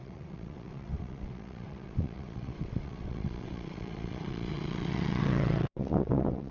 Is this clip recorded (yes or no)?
no